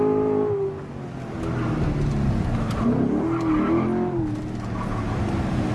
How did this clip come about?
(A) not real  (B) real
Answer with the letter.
B